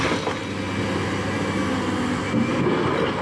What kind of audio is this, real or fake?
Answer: real